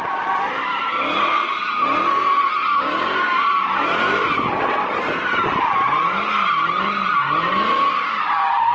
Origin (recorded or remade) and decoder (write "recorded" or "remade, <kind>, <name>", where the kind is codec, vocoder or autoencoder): recorded